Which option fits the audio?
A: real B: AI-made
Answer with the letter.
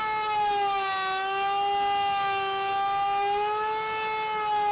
A